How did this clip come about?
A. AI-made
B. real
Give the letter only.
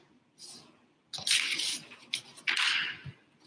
B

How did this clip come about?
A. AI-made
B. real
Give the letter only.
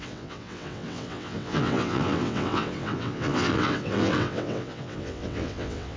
A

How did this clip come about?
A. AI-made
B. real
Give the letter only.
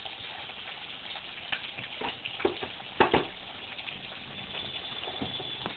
B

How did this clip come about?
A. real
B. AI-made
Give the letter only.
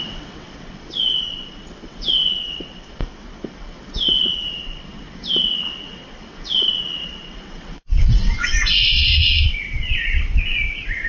B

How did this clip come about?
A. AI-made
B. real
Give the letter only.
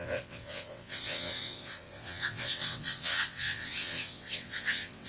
A